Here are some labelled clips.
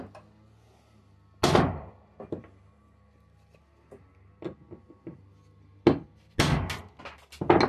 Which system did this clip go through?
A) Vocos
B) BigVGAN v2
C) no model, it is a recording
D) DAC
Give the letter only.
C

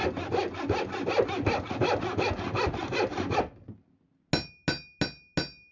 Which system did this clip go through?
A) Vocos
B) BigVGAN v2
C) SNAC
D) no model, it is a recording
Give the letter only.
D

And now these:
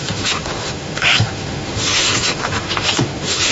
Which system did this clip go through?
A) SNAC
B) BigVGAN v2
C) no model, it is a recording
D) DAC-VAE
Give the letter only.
D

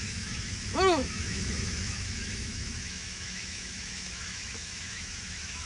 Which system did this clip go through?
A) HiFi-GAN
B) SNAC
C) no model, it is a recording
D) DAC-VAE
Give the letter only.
D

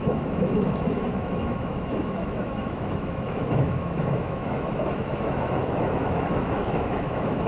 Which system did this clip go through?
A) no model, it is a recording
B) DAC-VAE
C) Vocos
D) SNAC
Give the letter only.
B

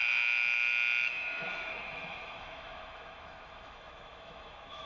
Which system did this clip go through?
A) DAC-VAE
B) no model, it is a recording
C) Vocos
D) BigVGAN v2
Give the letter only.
A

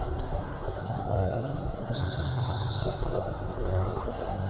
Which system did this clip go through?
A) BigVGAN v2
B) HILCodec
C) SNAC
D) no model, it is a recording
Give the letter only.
C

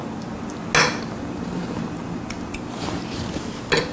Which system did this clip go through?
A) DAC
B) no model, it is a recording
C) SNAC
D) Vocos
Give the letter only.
B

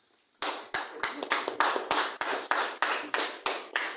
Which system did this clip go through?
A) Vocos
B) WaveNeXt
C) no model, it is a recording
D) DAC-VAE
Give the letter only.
C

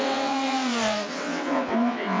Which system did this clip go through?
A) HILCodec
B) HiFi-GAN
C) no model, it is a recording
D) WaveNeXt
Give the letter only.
D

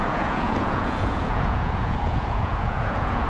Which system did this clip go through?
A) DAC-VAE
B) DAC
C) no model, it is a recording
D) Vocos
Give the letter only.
D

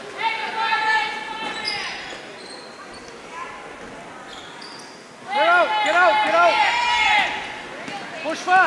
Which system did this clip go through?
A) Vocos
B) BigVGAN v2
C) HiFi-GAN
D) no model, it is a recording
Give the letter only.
D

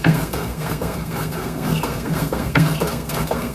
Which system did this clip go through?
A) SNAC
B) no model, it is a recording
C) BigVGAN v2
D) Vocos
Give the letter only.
A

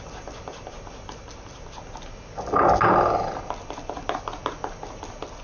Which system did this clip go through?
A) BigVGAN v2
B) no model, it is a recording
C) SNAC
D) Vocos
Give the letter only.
B